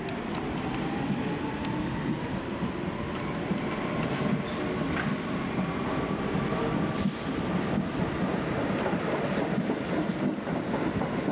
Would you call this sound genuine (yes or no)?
yes